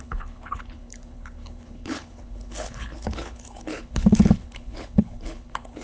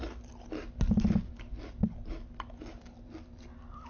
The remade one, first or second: first